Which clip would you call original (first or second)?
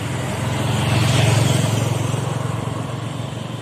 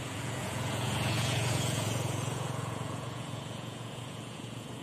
first